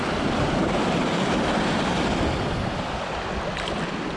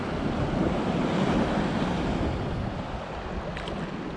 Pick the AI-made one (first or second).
first